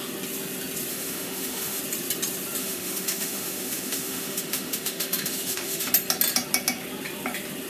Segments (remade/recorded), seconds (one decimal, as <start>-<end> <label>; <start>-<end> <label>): 0.0-0.9 recorded; 0.9-1.8 remade; 1.8-2.6 recorded; 2.6-5.9 remade; 5.9-7.7 recorded